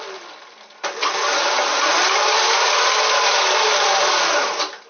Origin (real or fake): real